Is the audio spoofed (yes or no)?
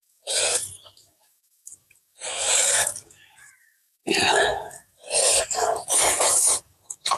yes